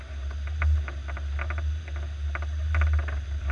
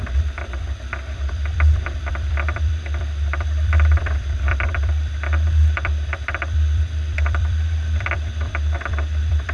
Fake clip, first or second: second